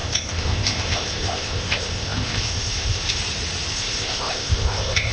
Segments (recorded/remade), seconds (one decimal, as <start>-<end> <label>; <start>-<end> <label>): 0.0-3.2 remade; 3.2-3.7 recorded; 3.7-5.1 remade